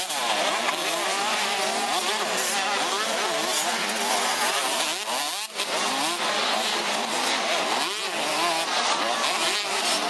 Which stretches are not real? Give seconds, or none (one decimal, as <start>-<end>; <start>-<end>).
none

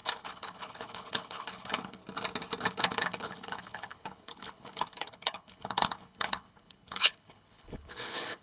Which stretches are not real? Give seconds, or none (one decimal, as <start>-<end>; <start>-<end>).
0.0-2.0; 2.7-8.4